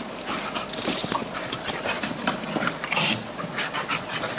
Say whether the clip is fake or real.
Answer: real